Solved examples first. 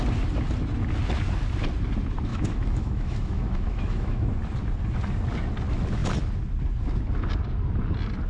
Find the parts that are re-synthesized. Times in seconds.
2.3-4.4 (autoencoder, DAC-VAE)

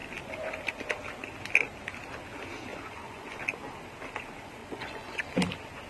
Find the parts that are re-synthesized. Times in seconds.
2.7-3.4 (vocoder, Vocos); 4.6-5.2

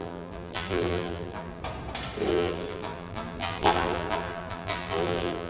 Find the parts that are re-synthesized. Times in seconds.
0.0-1.6 (vocoder, BigVGAN v2); 2.3-5.5

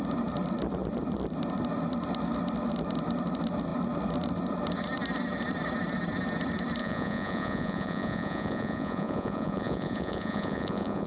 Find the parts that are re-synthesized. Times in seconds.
6.8-11.1 (vocoder, Vocos)

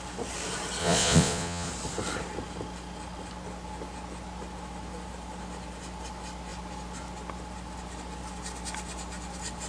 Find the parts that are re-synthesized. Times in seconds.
0.8-1.7 (vocoder, Vocos)